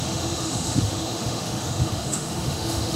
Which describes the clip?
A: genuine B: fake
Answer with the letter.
B